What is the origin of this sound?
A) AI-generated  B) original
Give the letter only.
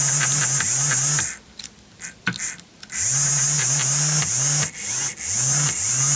B